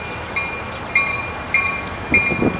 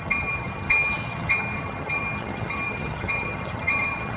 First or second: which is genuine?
first